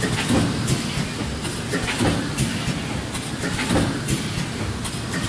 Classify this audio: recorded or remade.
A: recorded